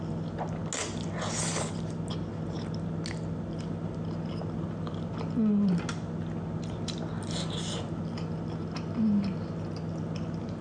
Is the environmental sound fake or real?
real